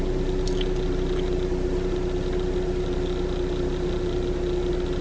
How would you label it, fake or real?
real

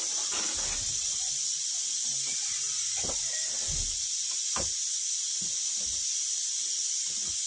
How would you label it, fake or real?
real